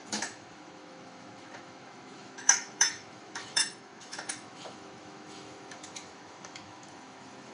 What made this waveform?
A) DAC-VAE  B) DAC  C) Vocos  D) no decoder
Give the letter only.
A